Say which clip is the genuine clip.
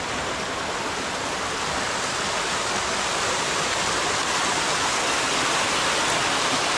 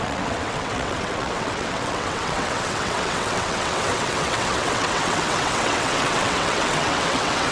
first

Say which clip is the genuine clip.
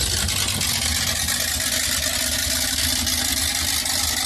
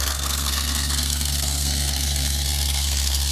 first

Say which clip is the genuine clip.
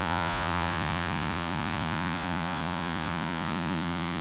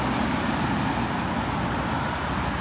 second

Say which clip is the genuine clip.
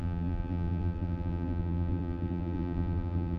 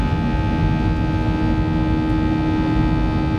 second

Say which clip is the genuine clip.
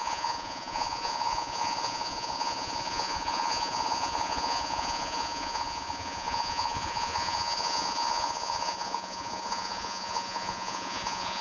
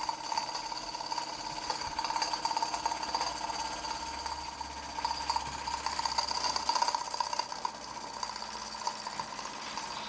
second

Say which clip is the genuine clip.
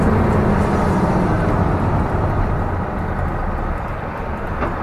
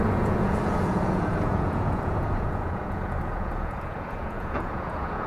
first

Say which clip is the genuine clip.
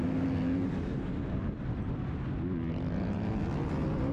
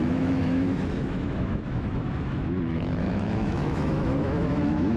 first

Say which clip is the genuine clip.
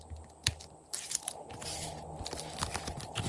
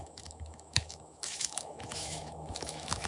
first